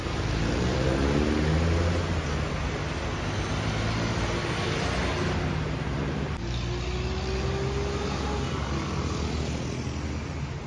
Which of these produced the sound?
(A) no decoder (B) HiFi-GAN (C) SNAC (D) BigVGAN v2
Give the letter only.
A